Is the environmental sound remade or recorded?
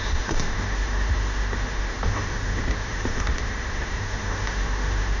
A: remade